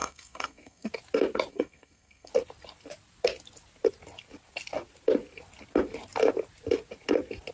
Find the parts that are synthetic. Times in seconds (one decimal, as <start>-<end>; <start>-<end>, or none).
0.0-0.9; 1.5-2.3